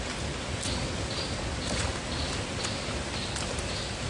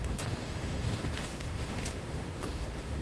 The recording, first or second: first